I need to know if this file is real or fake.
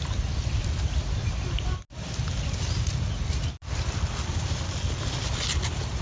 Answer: real